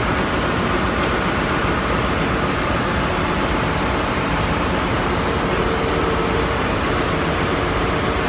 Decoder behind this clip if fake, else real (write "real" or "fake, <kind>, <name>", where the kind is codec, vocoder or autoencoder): fake, vocoder, BigVGAN v2